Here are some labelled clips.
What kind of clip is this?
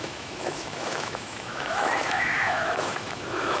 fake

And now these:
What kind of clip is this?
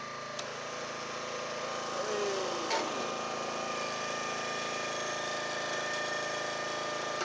real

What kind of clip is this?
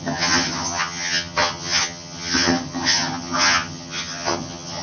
fake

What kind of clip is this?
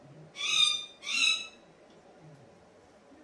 real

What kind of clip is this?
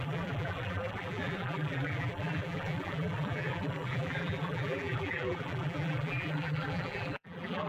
fake